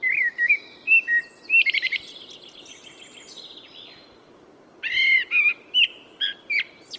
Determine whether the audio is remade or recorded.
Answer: recorded